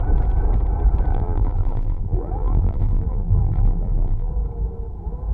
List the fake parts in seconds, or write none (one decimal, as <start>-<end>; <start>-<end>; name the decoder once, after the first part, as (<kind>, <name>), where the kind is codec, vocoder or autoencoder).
1.1-4.3 (vocoder, BigVGAN v2)